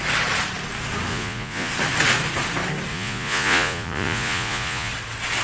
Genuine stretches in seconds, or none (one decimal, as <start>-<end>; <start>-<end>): 0.0-1.1; 1.7-2.9; 4.9-5.4